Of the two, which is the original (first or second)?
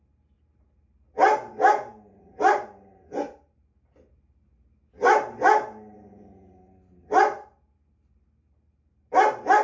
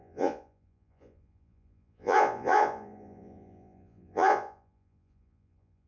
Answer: first